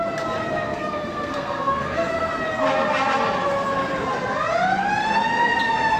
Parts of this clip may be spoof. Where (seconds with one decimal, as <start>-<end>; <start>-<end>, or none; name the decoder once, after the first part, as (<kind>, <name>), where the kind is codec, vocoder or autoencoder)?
0.7-2.3 (codec, SNAC)